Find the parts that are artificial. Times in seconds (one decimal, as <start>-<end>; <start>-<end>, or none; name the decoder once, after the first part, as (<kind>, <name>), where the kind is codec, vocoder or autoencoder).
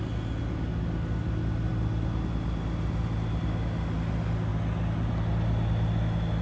none